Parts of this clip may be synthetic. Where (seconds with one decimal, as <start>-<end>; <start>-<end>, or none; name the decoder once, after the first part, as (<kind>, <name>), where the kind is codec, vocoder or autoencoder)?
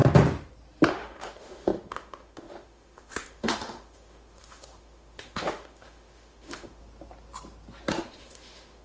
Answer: 0.9-6.8 (autoencoder, DAC-VAE); 7.9-8.8